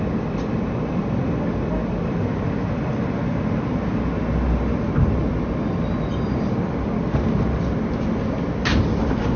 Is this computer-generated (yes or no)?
no